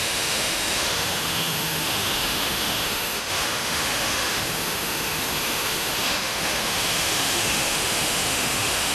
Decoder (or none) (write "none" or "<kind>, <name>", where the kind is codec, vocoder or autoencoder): autoencoder, DAC-VAE